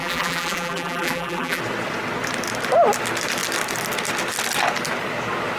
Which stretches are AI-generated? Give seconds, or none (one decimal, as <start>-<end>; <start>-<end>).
0.0-1.6